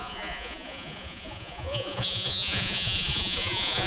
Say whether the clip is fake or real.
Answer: fake